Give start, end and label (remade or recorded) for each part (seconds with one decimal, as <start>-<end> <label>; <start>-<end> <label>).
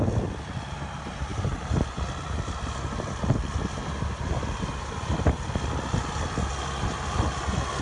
0.0-7.8 recorded